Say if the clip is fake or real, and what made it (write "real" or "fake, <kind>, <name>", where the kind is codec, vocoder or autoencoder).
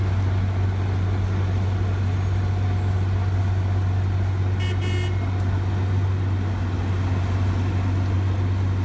real